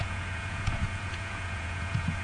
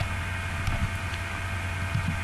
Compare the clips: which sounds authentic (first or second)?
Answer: second